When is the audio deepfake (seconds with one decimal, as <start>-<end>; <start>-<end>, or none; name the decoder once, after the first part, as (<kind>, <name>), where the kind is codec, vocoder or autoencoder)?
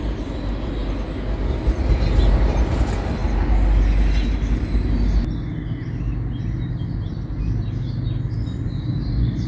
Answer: 0.0-0.8 (vocoder, BigVGAN v2); 2.8-3.2; 8.3-9.5